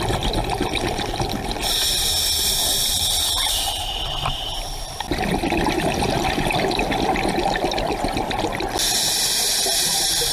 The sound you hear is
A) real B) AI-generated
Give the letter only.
A